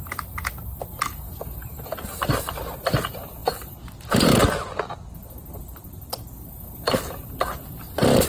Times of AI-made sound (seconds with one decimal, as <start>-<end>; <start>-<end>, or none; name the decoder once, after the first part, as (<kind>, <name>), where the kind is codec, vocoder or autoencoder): none